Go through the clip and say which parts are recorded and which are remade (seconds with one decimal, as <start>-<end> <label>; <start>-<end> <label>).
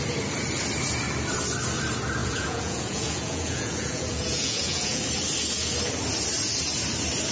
0.0-2.2 recorded; 2.2-5.0 remade; 5.0-7.3 recorded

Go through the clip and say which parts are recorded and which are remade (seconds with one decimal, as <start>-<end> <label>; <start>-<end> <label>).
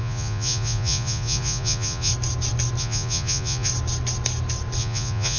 0.0-2.1 remade; 2.1-2.8 recorded; 2.8-3.7 remade; 3.7-4.8 recorded; 4.8-5.4 remade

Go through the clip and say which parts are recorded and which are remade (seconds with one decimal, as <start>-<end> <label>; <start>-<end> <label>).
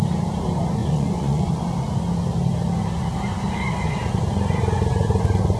0.0-0.8 recorded; 0.8-1.6 remade; 1.6-5.6 recorded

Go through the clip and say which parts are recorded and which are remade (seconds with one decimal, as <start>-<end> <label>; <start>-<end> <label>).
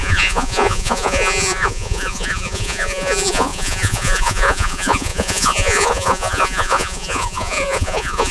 0.0-8.3 remade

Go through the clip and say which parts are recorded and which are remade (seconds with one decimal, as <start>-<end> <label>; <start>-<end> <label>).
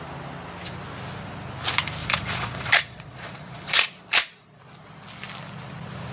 0.0-2.0 recorded; 2.0-4.6 remade; 4.6-6.1 recorded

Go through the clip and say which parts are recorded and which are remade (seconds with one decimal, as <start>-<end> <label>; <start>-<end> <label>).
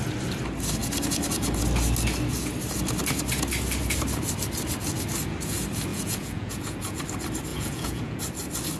0.0-5.9 recorded; 5.9-7.0 remade; 7.0-7.5 recorded; 7.5-8.2 remade; 8.2-8.8 recorded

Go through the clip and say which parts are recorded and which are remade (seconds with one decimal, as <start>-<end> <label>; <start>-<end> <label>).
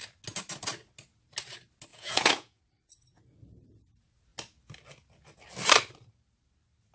0.0-1.9 recorded; 1.9-2.6 remade; 2.6-6.9 recorded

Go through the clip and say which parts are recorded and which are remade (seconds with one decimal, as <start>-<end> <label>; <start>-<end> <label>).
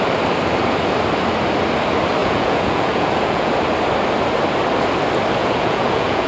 0.0-2.2 recorded; 2.2-3.5 remade; 3.5-5.4 recorded; 5.4-6.3 remade